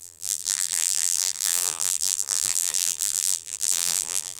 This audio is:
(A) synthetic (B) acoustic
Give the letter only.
A